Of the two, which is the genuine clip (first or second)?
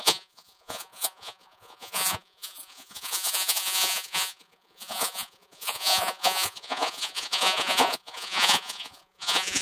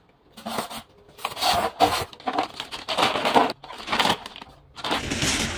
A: second